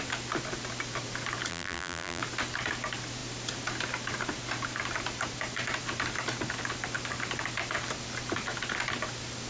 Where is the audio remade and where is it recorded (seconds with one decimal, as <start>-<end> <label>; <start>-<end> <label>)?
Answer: 0.0-1.5 recorded; 1.5-2.2 remade; 2.2-9.5 recorded